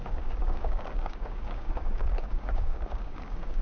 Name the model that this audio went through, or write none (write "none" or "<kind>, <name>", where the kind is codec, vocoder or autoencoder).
codec, DAC